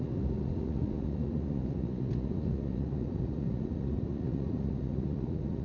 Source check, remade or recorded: remade